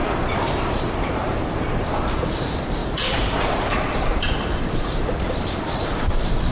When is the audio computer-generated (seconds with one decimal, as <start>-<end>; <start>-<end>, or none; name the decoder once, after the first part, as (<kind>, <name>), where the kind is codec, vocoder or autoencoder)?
0.0-6.5 (vocoder, BigVGAN v2)